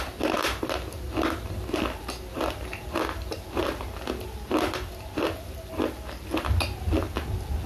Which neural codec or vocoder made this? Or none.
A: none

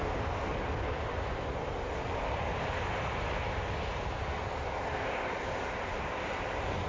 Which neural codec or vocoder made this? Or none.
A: none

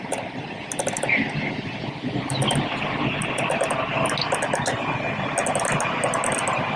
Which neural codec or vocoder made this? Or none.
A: none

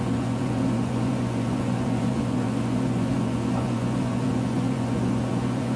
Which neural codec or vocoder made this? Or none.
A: vocoder, Vocos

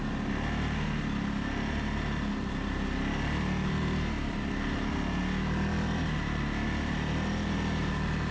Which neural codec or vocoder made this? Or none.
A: none